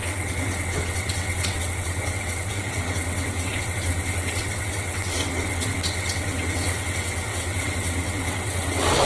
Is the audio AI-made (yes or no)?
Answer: yes